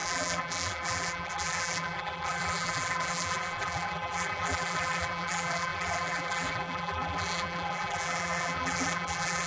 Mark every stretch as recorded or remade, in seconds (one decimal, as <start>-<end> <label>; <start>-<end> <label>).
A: 0.0-9.5 remade